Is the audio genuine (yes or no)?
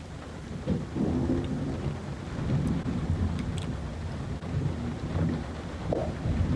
yes